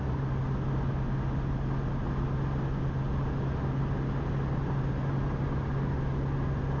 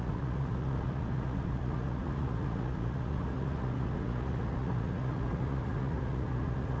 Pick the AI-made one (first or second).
second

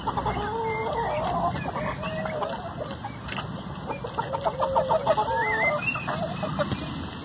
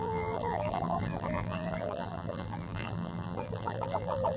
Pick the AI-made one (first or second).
second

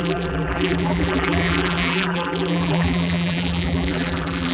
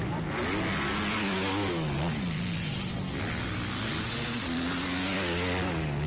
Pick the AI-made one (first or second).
first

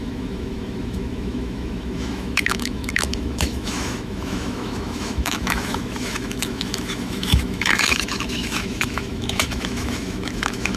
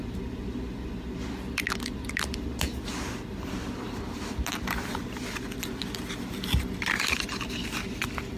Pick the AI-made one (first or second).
first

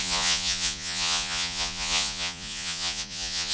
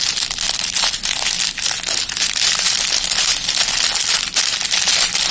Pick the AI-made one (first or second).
first